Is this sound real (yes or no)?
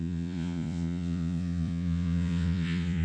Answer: no